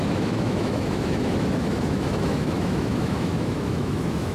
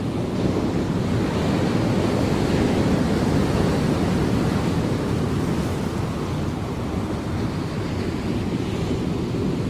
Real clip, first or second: second